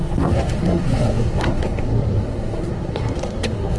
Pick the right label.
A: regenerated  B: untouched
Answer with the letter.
A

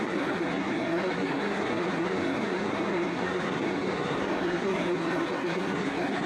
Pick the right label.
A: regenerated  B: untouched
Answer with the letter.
A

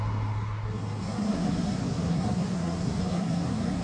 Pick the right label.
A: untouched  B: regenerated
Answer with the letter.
B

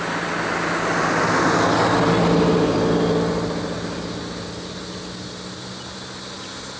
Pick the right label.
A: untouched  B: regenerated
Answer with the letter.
A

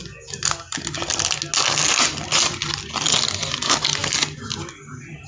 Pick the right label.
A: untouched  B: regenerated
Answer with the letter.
A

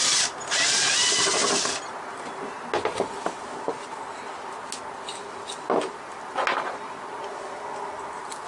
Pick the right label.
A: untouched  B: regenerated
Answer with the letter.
A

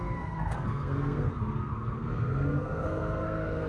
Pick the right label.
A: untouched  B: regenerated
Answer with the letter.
B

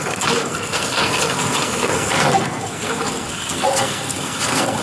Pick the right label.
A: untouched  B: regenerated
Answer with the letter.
B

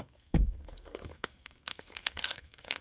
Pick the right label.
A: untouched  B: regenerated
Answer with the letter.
B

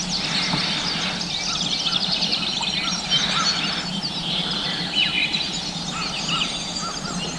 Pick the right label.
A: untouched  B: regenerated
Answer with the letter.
A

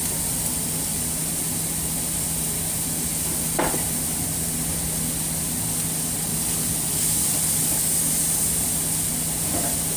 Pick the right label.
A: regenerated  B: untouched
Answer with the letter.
B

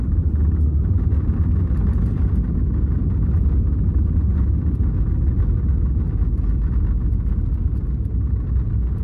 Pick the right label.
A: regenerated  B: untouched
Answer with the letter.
B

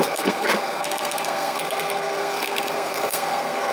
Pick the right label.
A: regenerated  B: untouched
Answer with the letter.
A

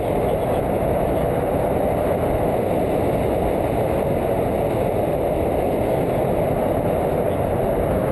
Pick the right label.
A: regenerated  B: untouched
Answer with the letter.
B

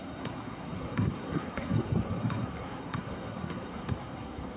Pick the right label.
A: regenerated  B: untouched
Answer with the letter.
A